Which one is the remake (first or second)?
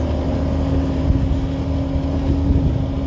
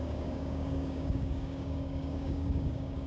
second